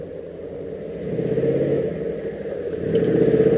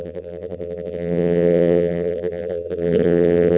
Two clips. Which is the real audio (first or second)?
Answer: first